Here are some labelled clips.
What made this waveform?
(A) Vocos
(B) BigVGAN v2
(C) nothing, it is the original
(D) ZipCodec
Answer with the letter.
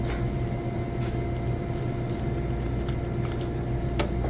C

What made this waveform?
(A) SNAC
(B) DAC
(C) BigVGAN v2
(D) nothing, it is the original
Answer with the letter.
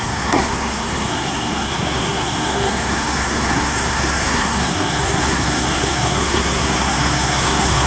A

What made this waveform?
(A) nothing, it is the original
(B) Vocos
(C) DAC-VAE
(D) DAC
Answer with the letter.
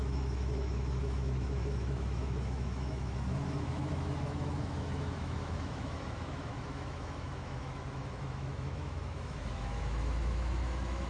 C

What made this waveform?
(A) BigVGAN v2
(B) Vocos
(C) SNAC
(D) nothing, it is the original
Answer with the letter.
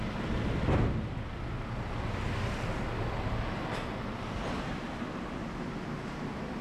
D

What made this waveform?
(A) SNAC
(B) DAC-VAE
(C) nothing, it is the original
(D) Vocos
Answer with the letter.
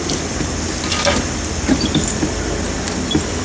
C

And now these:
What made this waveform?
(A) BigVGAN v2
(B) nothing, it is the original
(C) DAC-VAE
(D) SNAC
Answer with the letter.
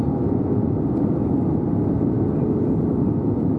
B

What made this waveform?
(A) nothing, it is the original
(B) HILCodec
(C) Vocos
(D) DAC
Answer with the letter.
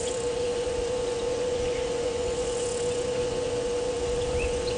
C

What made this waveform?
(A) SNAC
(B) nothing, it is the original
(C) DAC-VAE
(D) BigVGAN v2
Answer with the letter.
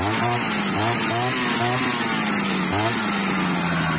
B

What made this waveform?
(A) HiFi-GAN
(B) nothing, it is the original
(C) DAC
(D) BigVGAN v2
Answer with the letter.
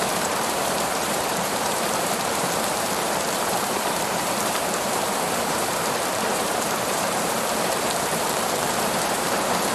D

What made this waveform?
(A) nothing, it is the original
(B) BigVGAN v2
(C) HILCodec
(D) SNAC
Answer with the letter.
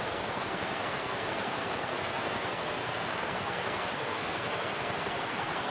D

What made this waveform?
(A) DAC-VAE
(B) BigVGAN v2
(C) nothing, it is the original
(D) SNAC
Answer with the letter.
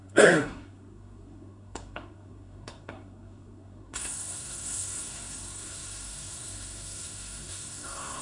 D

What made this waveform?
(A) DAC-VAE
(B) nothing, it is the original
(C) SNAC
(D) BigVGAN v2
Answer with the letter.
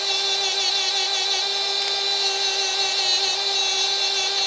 B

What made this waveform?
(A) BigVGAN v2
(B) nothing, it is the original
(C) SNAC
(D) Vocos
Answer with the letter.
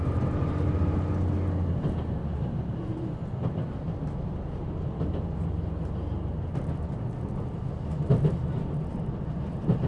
B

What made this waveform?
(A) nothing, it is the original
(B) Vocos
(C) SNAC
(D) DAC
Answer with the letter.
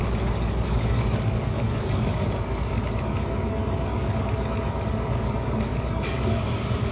D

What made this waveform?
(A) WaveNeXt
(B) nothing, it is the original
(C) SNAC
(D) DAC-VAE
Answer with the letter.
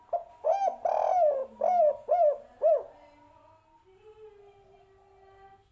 B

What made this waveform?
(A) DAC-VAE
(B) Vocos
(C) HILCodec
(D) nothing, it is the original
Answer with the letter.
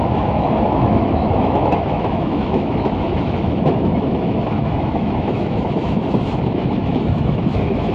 A